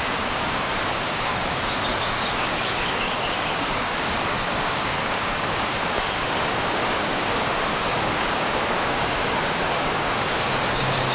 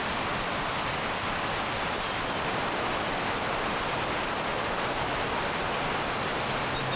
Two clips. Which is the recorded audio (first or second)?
second